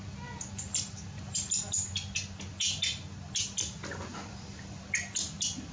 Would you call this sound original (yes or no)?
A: yes